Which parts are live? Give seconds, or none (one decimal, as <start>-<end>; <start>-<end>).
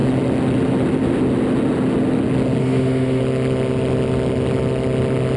0.0-2.6; 3.2-5.4